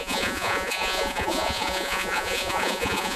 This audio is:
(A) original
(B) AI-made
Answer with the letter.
B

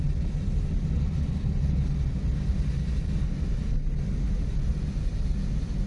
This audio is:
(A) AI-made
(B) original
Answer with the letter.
B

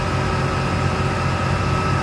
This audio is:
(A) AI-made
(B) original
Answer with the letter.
B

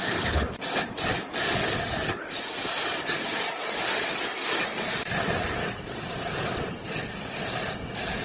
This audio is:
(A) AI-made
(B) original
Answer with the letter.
B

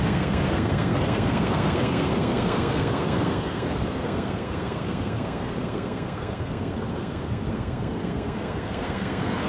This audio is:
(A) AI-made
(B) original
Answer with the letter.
A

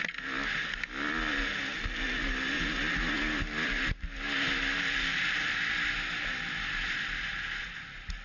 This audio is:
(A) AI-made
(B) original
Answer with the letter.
B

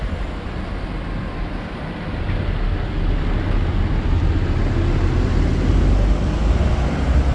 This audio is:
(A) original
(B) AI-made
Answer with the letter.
A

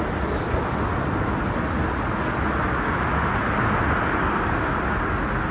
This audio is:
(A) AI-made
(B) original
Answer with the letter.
B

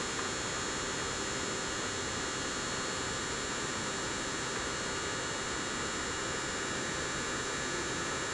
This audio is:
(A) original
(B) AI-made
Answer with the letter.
A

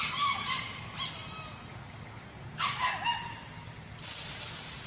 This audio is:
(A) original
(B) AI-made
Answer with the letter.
A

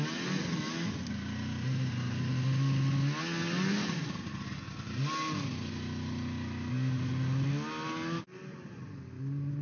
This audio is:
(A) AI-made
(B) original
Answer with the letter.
B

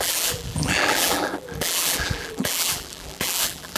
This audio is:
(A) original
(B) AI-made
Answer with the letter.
B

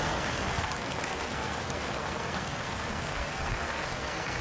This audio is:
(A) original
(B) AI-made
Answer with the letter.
B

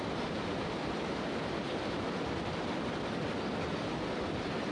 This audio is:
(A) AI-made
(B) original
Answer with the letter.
B